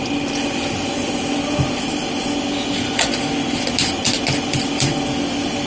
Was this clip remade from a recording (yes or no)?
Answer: no